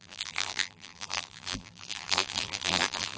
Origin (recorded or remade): remade